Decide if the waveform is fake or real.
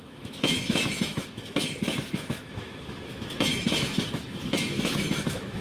fake